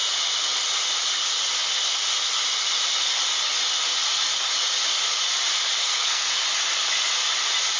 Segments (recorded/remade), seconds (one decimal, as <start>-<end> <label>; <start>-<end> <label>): 0.0-5.8 recorded; 5.8-6.3 remade; 6.3-7.8 recorded